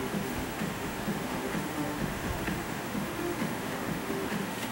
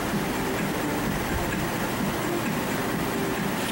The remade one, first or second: first